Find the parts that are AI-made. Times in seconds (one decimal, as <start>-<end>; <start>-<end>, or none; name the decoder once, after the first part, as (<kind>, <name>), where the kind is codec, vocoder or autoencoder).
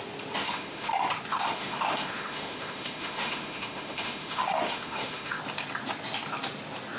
0.4-0.9 (autoencoder, DAC-VAE); 1.3-5.4